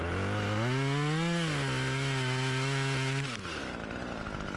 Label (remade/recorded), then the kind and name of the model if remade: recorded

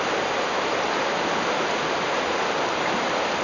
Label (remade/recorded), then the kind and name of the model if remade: recorded